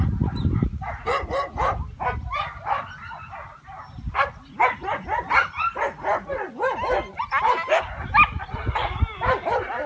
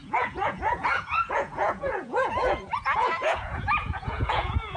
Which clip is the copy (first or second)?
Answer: second